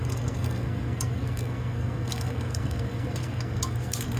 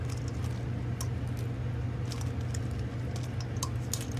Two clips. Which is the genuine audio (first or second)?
second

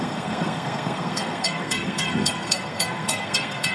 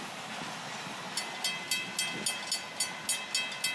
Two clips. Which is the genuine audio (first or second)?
second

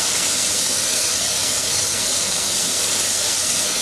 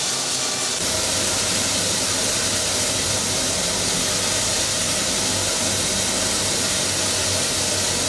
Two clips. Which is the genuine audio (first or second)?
second